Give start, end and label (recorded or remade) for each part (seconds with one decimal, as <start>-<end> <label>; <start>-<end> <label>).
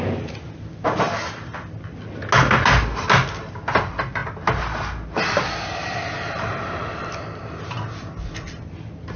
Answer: 0.0-9.2 recorded